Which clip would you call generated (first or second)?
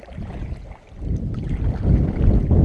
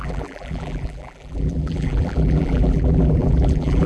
second